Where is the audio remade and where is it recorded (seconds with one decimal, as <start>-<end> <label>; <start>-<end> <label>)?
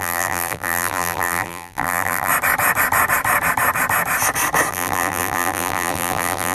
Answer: 0.0-2.3 remade; 2.3-4.7 recorded; 4.7-6.5 remade